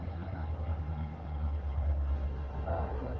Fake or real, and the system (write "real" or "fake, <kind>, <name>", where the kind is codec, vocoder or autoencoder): fake, codec, SNAC